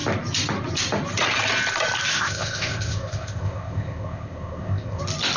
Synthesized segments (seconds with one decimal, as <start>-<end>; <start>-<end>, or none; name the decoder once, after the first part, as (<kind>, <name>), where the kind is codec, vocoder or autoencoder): 2.1-5.0 (codec, ZipCodec)